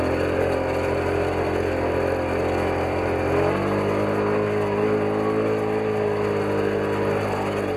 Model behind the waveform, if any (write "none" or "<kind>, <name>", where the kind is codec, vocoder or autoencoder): none